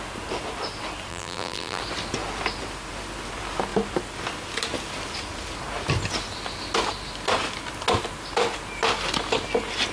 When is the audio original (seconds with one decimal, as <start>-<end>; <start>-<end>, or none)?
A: 0.0-1.1; 1.8-9.9